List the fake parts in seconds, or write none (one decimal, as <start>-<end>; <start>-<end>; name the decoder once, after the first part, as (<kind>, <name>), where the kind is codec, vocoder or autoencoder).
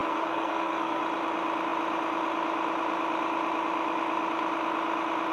0.0-1.0 (codec, SNAC)